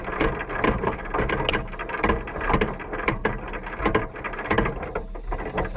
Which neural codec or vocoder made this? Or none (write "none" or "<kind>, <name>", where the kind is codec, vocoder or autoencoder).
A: none